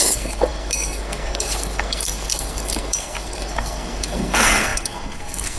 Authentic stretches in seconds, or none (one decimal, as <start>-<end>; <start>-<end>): none